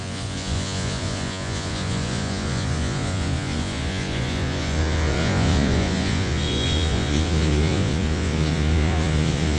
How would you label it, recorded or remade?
remade